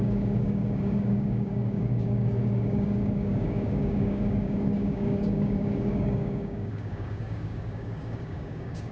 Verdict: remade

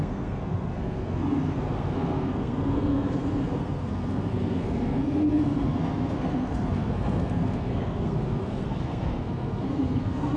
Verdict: remade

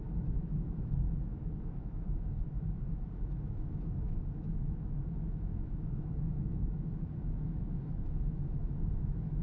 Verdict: remade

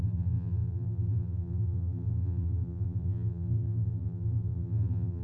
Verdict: remade